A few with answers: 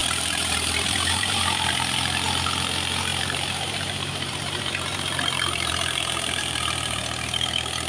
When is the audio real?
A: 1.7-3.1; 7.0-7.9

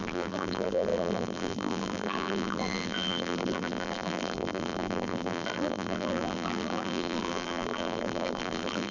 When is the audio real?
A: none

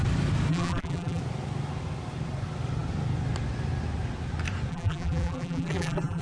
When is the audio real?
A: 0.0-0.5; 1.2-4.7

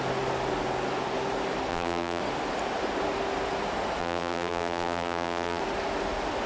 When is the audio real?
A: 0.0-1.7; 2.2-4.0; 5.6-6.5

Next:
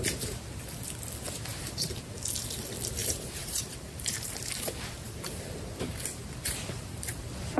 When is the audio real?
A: 0.0-3.0; 5.3-7.6

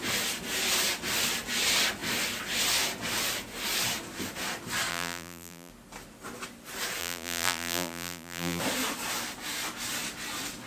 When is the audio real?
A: 0.0-4.9; 5.7-7.0; 8.6-10.7

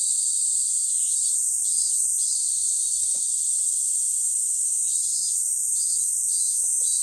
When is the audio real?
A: none

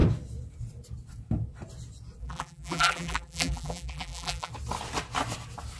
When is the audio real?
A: 0.0-2.2; 4.5-5.8